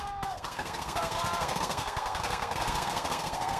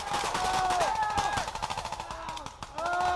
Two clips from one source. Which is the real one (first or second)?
second